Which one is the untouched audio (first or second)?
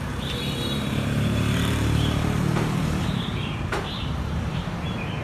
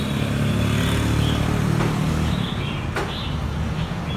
second